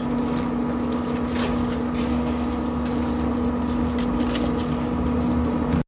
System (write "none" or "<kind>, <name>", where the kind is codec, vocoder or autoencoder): none